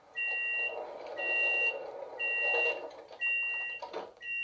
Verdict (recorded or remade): recorded